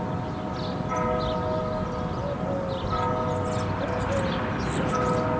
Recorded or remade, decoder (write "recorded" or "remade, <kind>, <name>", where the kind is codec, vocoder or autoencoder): recorded